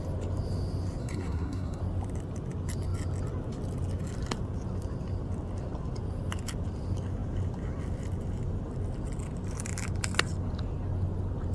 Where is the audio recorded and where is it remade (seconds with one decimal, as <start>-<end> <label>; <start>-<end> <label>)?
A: 0.0-1.0 recorded; 1.0-1.8 remade; 1.8-11.5 recorded